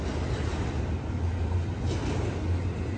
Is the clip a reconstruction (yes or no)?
no